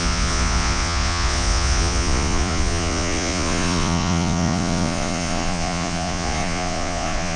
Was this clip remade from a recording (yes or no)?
yes